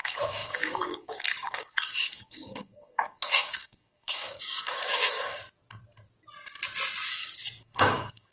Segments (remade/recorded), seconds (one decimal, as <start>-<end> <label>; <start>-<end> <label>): 0.0-5.4 remade; 5.4-7.6 recorded; 7.6-8.3 remade